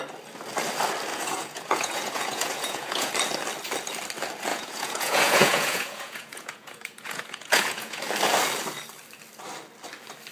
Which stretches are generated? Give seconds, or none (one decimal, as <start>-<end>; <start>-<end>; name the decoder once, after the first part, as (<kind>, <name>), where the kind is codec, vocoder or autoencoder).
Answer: 1.1-3.1 (vocoder, Vocos); 4.5-8.0